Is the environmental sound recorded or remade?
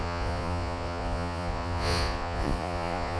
remade